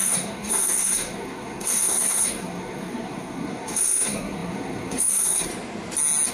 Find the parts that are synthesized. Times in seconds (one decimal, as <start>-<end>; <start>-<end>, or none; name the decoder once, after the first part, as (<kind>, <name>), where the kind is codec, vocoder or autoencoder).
0.0-5.5 (codec, SNAC)